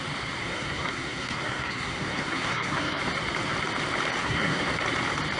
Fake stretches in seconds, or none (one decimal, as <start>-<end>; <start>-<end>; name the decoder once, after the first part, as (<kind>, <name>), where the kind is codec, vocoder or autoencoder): 0.4-3.0 (codec, SNAC); 4.2-4.7